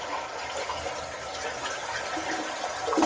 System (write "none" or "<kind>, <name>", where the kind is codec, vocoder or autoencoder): none